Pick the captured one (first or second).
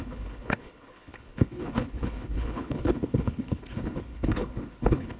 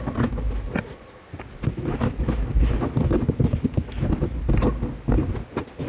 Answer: second